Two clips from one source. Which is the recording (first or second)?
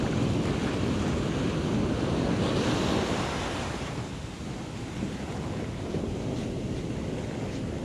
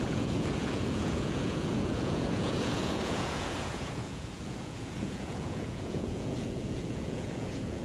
first